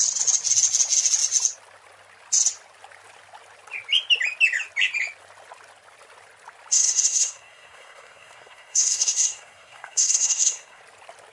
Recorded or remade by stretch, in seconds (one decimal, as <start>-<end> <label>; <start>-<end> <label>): 0.0-6.7 recorded; 6.7-10.8 remade; 10.8-11.3 recorded